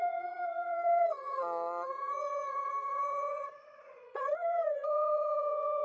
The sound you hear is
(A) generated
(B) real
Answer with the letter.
A